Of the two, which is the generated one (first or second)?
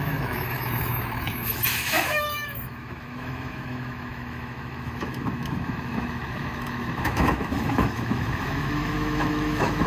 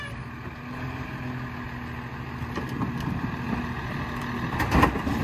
first